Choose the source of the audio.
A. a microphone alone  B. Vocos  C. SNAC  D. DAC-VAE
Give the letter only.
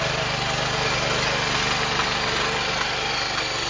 A